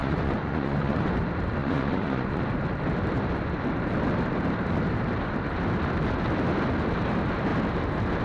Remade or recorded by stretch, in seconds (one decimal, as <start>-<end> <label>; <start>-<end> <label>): 0.0-1.1 remade; 1.1-1.6 recorded; 1.6-2.4 remade; 2.4-8.2 recorded